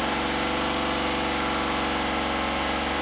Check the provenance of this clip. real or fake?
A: real